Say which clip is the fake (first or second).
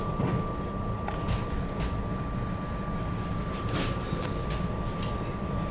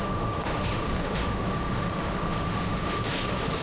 second